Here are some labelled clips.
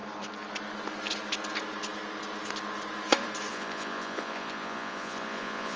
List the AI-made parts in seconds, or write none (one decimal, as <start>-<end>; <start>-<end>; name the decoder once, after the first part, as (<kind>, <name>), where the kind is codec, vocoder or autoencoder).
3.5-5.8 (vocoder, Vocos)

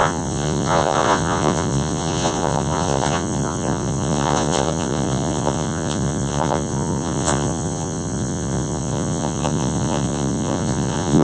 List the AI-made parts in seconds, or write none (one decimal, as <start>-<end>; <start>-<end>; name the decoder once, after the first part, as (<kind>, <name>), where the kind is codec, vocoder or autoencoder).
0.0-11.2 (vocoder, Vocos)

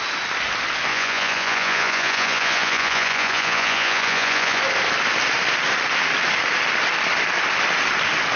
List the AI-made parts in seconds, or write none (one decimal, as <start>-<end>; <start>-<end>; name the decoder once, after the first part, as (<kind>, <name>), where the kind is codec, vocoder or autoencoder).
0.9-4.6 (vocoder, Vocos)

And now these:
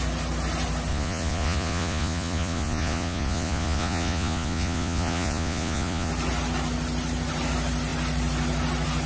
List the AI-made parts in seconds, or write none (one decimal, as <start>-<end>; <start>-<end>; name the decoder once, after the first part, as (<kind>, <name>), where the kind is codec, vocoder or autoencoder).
0.9-6.1 (vocoder, Vocos)

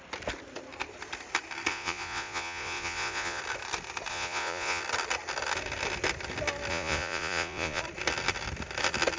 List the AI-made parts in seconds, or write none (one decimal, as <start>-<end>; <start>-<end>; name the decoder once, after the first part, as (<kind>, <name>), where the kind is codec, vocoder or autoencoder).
1.7-3.4 (vocoder, Vocos); 4.1-4.8; 6.7-7.8

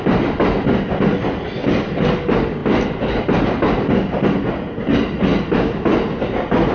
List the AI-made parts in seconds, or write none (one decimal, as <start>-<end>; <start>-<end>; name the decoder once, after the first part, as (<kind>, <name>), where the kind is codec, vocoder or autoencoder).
none